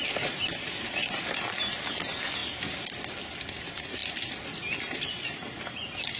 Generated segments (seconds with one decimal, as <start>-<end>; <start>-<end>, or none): 0.0-2.4; 3.3-4.0; 4.8-6.2